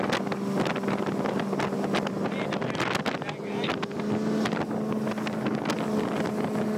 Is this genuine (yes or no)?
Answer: yes